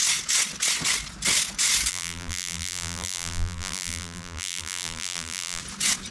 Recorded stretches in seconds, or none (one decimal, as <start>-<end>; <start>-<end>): 0.0-1.9; 5.6-6.1